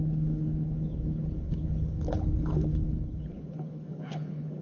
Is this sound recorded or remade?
remade